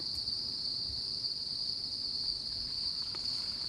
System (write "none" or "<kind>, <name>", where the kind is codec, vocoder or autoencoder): none